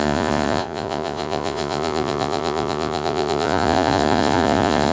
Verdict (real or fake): fake